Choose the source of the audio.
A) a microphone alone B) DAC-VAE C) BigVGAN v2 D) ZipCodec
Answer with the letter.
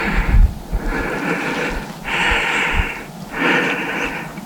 A